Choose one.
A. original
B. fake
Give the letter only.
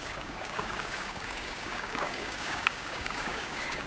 B